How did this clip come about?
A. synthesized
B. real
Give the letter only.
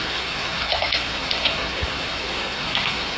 A